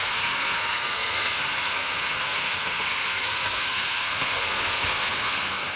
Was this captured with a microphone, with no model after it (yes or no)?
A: no